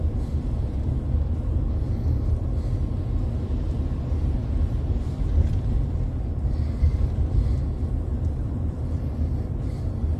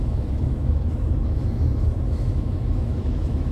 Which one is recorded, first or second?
first